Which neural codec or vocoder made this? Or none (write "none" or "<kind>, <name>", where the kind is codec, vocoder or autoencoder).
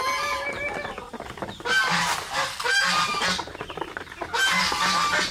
none